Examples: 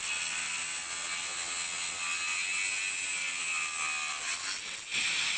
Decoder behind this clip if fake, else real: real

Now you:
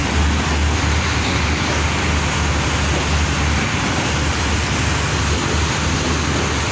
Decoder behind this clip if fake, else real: real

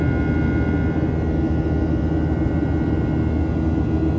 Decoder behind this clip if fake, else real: real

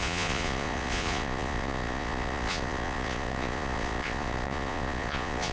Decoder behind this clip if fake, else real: fake, vocoder, Vocos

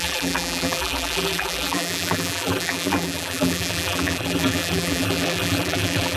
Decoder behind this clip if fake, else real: fake, vocoder, BigVGAN v2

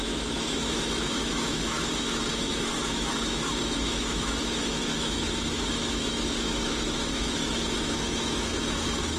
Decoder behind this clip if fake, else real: fake, autoencoder, DAC-VAE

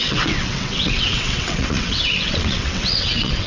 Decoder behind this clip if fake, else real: fake, vocoder, WaveNeXt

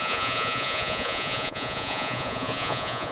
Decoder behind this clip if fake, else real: fake, vocoder, Vocos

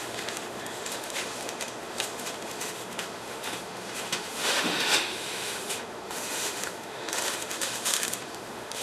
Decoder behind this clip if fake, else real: fake, autoencoder, DAC-VAE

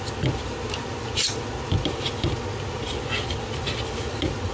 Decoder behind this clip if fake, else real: real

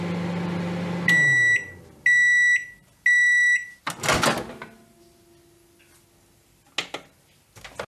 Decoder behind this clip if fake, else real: real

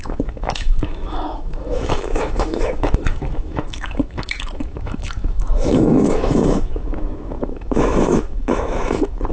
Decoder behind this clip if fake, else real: fake, autoencoder, DAC-VAE